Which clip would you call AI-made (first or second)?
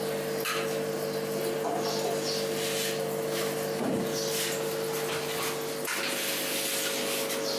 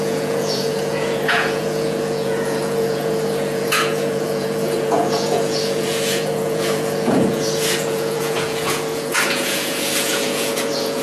second